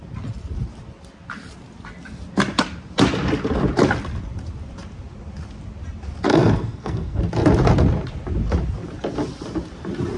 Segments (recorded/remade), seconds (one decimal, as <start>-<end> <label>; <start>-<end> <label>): 0.0-6.3 recorded; 6.3-7.2 remade; 7.2-10.2 recorded